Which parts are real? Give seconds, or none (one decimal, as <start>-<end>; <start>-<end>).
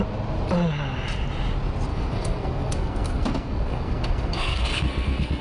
0.0-1.9